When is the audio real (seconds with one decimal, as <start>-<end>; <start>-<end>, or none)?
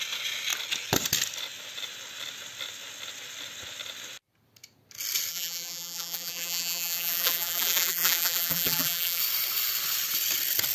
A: 0.0-5.3; 9.2-10.7